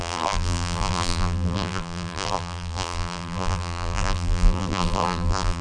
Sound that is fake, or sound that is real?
fake